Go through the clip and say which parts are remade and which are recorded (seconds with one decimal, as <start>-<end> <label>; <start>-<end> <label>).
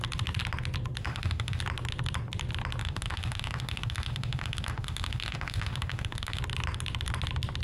0.0-1.0 recorded; 1.0-1.6 remade; 1.6-2.8 recorded; 2.8-6.4 remade; 6.4-7.6 recorded